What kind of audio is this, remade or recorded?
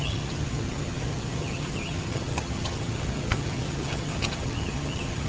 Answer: remade